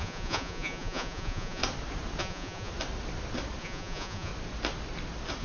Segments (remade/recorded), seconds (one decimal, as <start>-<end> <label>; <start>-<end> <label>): 0.0-1.6 remade; 1.6-2.2 recorded; 2.2-2.7 remade; 2.7-3.6 recorded; 3.6-4.3 remade; 4.3-5.4 recorded